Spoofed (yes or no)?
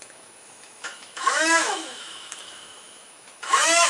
yes